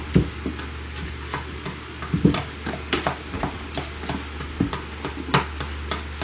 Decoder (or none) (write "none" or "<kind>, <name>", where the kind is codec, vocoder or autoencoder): none